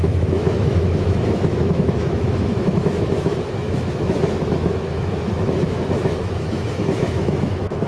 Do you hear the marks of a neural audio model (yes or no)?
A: yes